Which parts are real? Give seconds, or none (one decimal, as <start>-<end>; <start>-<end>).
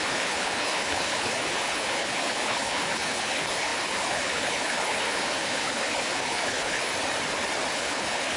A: 6.9-7.7